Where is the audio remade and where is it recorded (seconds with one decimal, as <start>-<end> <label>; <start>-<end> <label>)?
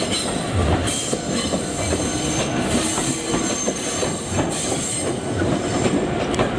0.0-6.6 recorded